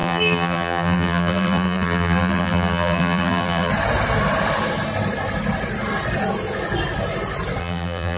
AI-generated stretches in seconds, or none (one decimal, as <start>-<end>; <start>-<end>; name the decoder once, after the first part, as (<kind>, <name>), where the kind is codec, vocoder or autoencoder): 0.0-3.7 (vocoder, BigVGAN v2); 7.6-8.2